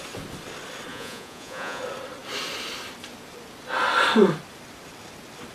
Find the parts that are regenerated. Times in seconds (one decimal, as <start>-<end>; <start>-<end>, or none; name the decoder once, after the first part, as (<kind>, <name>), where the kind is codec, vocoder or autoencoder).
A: 0.9-1.8 (vocoder, Vocos)